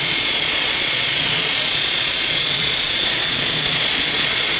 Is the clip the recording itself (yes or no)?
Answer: no